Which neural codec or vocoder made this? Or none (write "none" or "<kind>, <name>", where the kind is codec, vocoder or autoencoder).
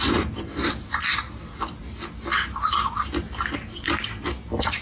vocoder, BigVGAN v2